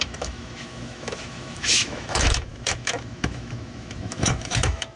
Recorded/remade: remade